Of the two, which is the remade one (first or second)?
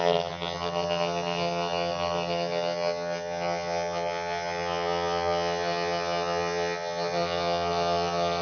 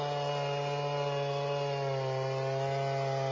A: first